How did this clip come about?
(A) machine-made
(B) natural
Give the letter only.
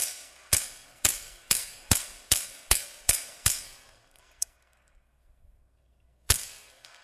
A